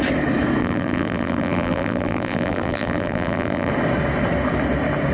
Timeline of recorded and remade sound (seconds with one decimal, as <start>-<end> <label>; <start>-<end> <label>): 0.0-0.6 recorded; 0.6-3.7 remade; 3.7-5.1 recorded